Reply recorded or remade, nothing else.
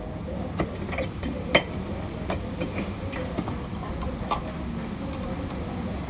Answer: recorded